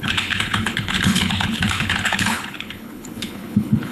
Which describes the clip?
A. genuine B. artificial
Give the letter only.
B